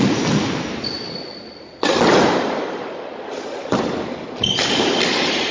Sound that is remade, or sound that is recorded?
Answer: recorded